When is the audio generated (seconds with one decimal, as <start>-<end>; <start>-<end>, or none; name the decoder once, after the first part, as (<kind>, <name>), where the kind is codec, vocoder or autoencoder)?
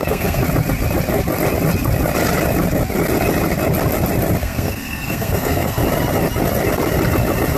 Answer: 0.0-0.4 (codec, SNAC); 4.4-5.8